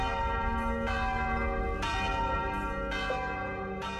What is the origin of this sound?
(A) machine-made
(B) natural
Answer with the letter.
B